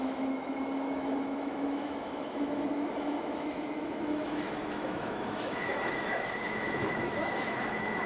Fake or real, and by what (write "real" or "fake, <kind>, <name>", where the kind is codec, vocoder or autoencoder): fake, autoencoder, DAC-VAE